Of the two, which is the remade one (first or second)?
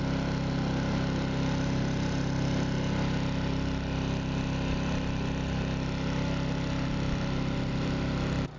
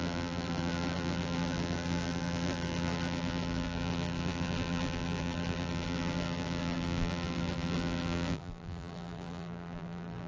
second